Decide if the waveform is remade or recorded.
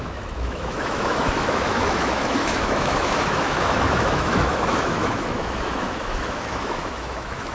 remade